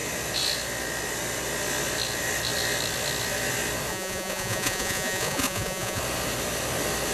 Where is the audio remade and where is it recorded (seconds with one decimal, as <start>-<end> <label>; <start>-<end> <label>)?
0.0-3.9 recorded; 3.9-6.0 remade; 6.0-7.1 recorded